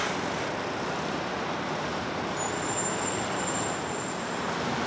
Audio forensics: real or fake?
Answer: real